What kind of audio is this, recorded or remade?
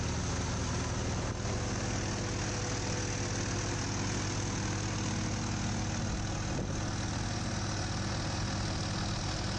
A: recorded